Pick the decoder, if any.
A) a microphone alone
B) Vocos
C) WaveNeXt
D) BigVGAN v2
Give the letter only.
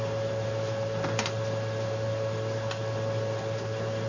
A